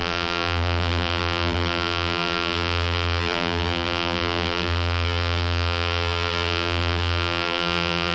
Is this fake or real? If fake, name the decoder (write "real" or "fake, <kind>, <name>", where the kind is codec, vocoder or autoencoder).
fake, vocoder, BigVGAN v2